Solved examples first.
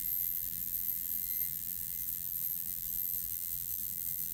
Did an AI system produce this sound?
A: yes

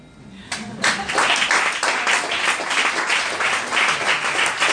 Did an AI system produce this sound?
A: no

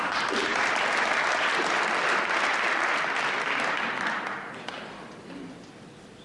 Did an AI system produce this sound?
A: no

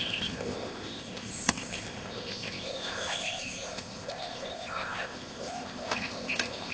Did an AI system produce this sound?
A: yes